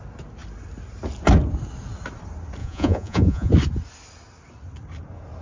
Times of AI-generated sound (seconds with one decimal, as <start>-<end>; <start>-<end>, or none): 2.6-3.5